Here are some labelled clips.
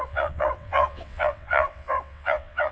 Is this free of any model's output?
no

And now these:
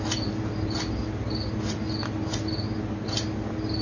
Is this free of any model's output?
yes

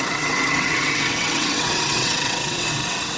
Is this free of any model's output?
no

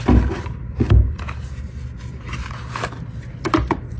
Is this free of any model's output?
yes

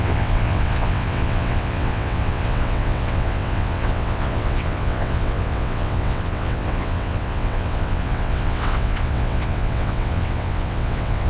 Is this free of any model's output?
no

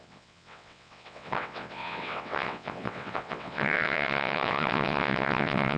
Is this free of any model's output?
no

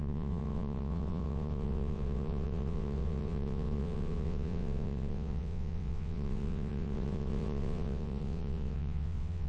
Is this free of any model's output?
no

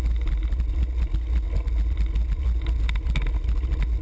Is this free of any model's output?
yes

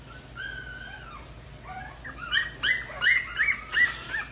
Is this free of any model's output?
yes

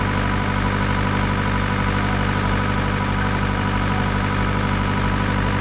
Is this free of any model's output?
yes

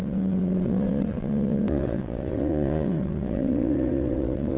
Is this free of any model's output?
no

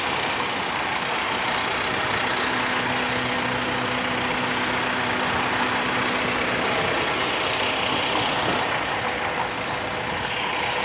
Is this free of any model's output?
yes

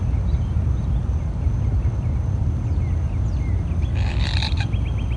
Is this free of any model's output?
yes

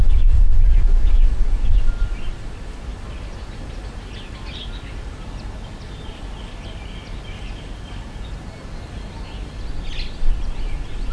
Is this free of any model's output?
yes